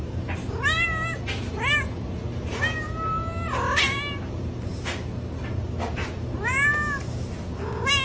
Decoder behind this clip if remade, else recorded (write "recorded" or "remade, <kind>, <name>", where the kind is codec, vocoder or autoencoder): recorded